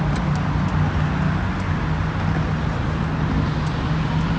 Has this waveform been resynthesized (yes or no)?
no